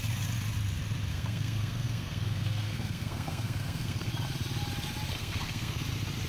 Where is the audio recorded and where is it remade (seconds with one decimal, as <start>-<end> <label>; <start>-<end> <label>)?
0.0-1.1 recorded; 1.1-4.1 remade; 4.1-5.2 recorded; 5.2-5.8 remade; 5.8-6.3 recorded

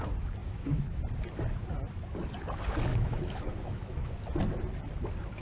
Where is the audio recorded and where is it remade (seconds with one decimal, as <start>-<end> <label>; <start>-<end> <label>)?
0.0-0.4 recorded; 0.4-1.0 remade; 1.0-2.9 recorded; 2.9-4.1 remade; 4.1-5.4 recorded

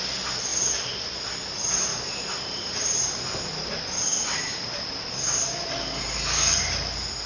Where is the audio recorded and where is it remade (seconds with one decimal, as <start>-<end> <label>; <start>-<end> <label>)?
0.0-1.9 recorded; 1.9-3.2 remade; 3.2-4.1 recorded; 4.1-5.7 remade; 5.7-7.3 recorded

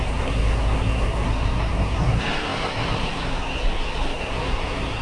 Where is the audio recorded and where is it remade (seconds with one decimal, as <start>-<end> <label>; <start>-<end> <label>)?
0.0-5.0 remade

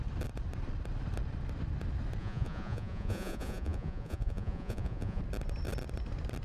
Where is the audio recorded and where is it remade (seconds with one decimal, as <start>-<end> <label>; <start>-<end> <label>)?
0.0-2.2 recorded; 2.2-5.2 remade; 5.2-6.4 recorded

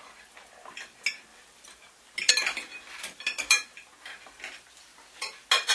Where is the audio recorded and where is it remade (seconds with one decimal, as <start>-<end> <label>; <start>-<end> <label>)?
0.0-5.7 recorded

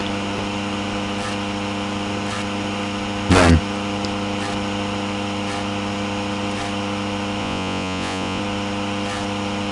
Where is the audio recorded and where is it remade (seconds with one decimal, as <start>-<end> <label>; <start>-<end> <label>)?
0.0-7.4 recorded; 7.4-8.4 remade; 8.4-9.7 recorded